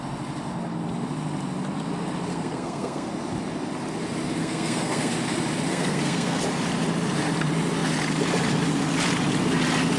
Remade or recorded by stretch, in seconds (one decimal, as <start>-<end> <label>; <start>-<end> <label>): 0.0-2.3 recorded; 2.3-3.1 remade; 3.1-4.4 recorded; 4.4-5.1 remade; 5.1-5.7 recorded; 5.7-6.4 remade; 6.4-10.0 recorded